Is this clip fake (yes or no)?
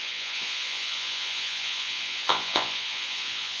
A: yes